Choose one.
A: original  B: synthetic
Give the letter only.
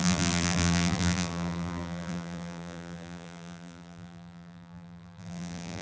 B